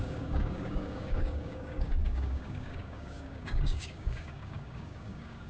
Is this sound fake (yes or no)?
yes